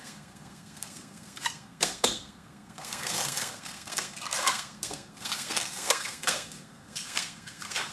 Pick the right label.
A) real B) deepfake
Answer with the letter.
B